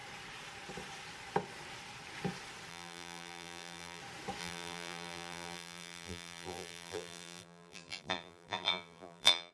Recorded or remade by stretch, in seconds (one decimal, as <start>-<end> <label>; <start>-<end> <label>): 0.0-2.7 recorded; 2.7-4.0 remade; 4.0-4.4 recorded; 4.4-9.5 remade

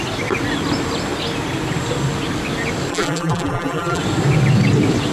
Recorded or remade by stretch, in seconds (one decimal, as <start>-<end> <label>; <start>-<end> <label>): 0.0-2.9 recorded; 2.9-4.0 remade; 4.0-5.1 recorded